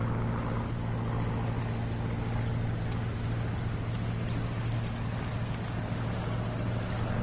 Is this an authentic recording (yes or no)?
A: yes